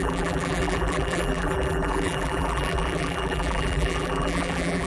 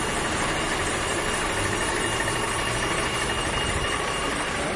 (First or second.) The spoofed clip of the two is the first